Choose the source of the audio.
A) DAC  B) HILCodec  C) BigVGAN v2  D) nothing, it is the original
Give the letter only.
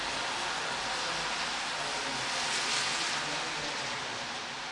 D